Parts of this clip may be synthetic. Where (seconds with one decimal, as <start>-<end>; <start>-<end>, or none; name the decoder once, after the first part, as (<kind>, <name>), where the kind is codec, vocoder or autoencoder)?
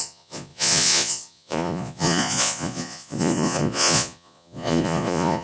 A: 0.0-5.4 (vocoder, Vocos)